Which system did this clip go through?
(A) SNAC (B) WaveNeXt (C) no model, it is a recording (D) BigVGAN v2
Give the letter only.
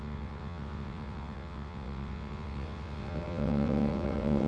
B